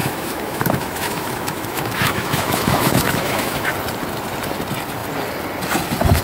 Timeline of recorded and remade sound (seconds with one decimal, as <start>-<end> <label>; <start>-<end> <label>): 0.0-3.7 remade; 3.7-6.2 recorded